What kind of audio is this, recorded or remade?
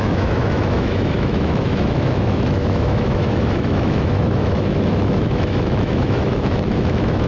remade